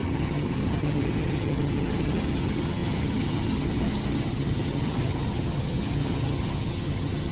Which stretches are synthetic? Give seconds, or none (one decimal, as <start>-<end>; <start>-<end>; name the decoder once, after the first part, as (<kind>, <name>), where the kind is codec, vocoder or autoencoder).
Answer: 0.0-7.3 (vocoder, HiFi-GAN)